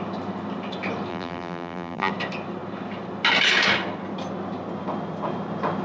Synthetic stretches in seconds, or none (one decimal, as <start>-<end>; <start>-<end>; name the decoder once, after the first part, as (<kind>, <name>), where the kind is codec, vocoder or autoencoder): 1.1-2.1 (vocoder, BigVGAN v2)